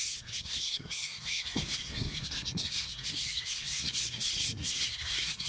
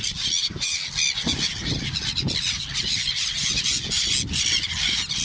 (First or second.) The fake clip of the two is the first